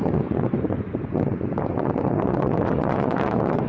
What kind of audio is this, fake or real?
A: fake